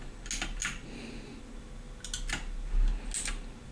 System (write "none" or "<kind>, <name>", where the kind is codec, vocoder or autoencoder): none